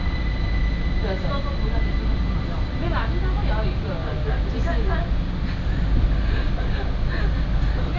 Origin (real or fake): real